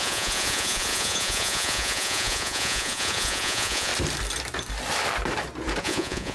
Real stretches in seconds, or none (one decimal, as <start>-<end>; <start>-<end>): 3.9-5.8